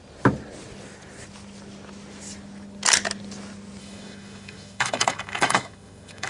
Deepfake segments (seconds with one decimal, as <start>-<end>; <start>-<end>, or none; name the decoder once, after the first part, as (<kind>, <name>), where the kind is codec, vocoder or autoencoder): 3.8-6.3 (autoencoder, DAC-VAE)